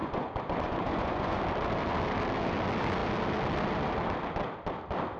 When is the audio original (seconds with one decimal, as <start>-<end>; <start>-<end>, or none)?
1.4-5.2

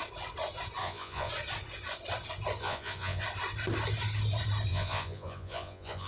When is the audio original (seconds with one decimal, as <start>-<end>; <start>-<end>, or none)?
0.0-0.8; 1.3-2.6; 3.2-4.7

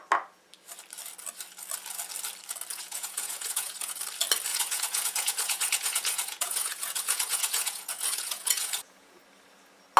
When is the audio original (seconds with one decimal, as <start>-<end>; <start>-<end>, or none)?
0.0-2.7; 4.0-4.5; 9.2-10.0

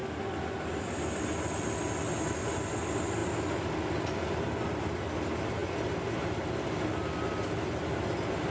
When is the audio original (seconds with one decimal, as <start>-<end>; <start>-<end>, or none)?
0.0-8.5

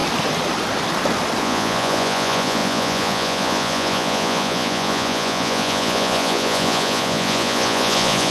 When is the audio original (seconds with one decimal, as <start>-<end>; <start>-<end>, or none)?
0.0-1.4

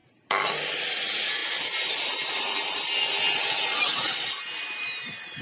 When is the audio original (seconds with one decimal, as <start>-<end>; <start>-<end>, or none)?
0.0-5.4

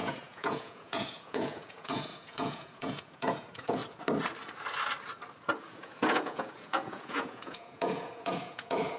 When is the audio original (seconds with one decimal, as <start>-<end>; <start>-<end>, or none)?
3.8-5.6

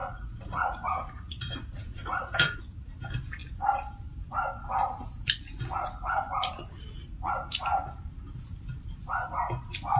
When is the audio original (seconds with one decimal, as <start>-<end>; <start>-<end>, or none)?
2.6-10.0